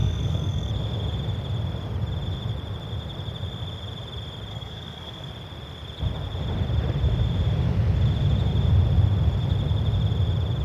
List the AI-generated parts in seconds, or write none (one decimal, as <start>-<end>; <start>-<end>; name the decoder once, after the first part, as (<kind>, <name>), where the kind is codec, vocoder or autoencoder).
0.0-0.7 (codec, SNAC); 4.5-5.3